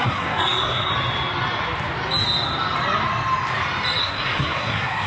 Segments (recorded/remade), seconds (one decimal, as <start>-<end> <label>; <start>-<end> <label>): 0.0-0.9 remade; 0.9-4.0 recorded; 4.0-5.1 remade